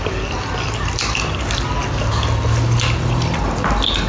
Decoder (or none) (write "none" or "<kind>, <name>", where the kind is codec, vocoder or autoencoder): none